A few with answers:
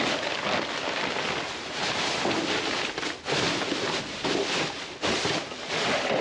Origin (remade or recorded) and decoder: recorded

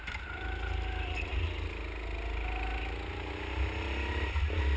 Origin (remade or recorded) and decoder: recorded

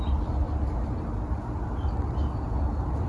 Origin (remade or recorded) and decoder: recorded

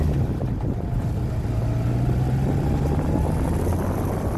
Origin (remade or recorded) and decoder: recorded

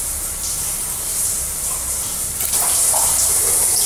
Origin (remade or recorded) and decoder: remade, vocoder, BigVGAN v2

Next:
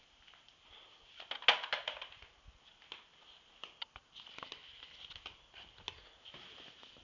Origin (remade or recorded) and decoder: recorded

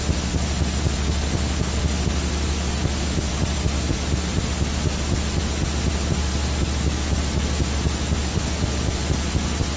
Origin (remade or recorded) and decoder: recorded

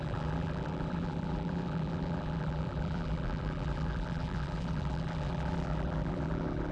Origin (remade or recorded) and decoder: remade, vocoder, BigVGAN v2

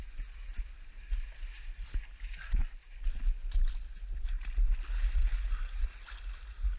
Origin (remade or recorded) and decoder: recorded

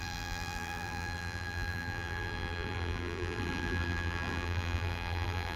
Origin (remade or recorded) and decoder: remade, vocoder, BigVGAN v2